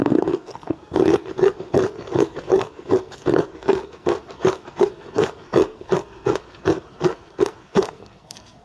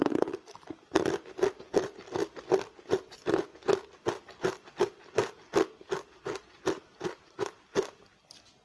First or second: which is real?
second